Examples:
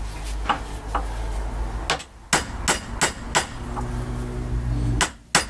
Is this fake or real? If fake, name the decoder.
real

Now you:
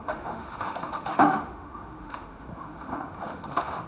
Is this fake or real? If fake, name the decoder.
fake, autoencoder, DAC-VAE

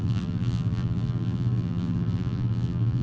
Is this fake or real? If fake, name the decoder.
fake, vocoder, BigVGAN v2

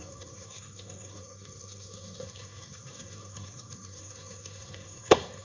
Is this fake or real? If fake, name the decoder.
fake, codec, SNAC